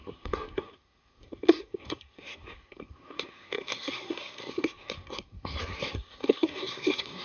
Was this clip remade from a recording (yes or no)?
yes